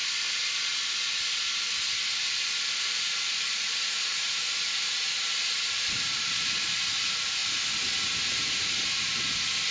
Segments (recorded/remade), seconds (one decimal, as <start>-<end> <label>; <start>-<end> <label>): 0.0-2.1 recorded; 2.1-7.4 remade; 7.4-8.3 recorded; 8.3-9.7 remade